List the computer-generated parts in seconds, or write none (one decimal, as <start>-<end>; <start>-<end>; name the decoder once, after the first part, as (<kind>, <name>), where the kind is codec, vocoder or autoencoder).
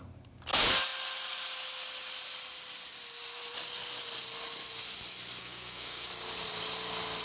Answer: 5.4-6.1 (codec, SNAC)